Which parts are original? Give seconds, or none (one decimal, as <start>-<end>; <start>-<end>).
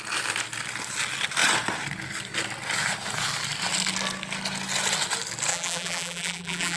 0.0-5.5